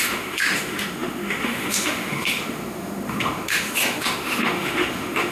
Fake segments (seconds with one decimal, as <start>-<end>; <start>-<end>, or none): 0.0-5.3